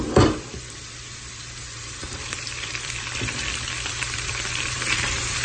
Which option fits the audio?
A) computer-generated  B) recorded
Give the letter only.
A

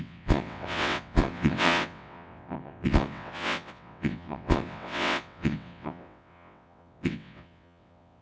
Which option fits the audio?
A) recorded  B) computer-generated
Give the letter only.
B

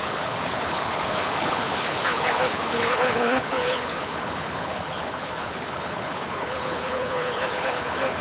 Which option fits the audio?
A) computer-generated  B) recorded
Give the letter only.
A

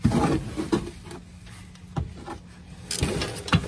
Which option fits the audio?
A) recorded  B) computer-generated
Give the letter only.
A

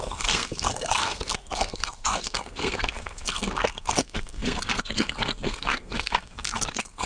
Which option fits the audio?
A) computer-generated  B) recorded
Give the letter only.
A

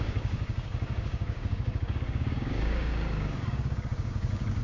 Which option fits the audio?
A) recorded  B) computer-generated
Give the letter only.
B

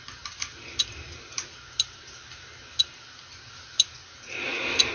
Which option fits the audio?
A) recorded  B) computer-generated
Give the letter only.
A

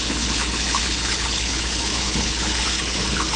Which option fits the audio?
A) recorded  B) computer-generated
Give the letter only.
B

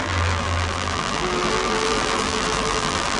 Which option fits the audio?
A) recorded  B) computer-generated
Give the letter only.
B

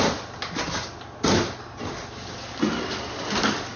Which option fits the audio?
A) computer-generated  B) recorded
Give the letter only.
B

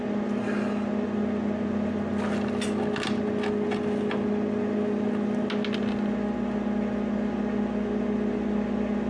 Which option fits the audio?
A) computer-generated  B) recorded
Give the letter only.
B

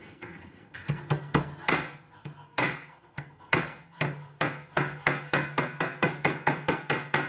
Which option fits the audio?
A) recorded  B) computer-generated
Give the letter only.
B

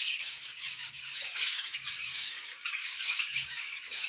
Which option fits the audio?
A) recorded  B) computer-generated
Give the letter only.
B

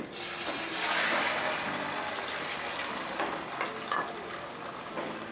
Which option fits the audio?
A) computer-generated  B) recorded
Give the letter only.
B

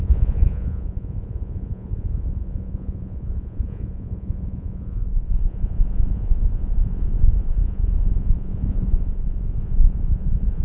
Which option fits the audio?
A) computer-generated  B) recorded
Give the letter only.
A